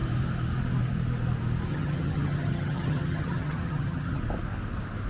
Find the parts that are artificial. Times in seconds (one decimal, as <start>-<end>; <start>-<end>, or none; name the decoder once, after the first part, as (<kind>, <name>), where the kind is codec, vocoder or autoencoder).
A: 1.7-4.2 (vocoder, HiFi-GAN)